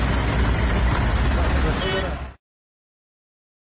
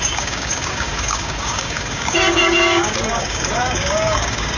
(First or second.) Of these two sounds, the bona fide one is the first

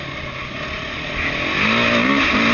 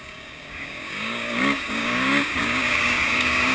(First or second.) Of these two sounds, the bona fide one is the first